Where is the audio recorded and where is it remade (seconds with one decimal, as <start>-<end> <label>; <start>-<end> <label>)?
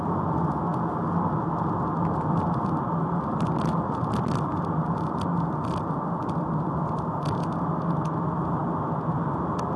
0.0-9.8 recorded